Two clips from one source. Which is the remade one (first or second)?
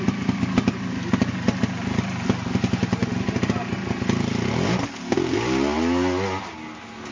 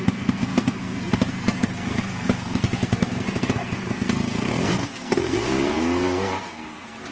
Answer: second